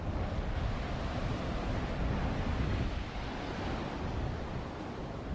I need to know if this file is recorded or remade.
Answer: recorded